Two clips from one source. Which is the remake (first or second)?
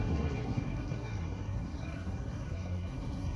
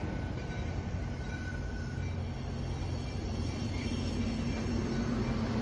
first